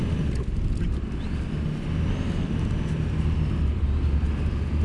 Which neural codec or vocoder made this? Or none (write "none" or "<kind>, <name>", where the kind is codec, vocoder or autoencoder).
vocoder, BigVGAN v2